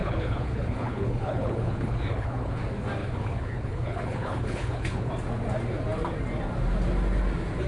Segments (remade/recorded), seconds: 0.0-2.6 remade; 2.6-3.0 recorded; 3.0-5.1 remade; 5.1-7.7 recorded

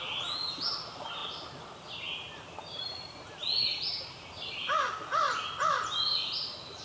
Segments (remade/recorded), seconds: 0.0-6.8 recorded